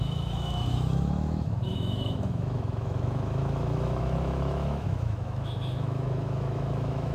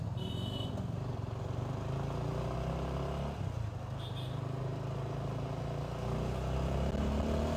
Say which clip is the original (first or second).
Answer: second